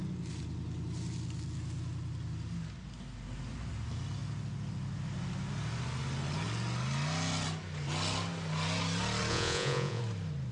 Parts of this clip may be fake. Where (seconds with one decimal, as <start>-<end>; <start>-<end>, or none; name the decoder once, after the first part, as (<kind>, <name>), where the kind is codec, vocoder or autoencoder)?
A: 9.3-10.0 (vocoder, Vocos)